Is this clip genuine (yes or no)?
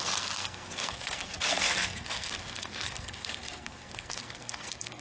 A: no